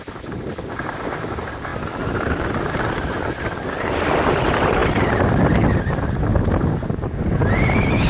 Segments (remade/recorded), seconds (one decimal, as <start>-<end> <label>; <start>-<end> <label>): 0.0-8.1 recorded